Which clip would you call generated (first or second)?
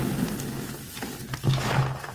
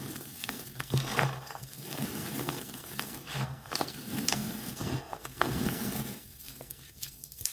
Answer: second